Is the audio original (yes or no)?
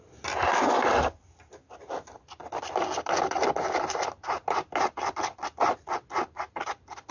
yes